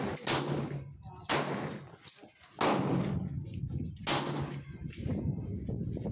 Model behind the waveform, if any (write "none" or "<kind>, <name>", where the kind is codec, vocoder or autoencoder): none